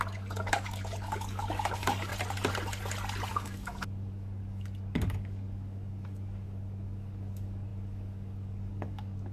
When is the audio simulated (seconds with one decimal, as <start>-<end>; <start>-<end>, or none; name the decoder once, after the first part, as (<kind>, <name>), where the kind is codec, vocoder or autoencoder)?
0.0-2.1 (codec, DAC); 3.3-9.3